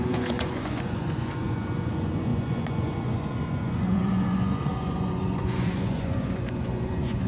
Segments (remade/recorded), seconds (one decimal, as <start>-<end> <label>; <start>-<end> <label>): 0.0-7.3 remade